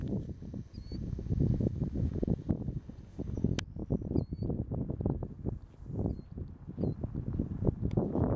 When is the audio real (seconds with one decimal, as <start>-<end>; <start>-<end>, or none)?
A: 0.0-8.4